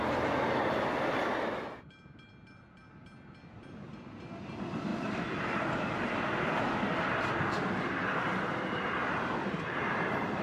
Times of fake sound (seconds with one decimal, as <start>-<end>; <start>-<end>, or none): 4.9-6.6; 9.0-9.9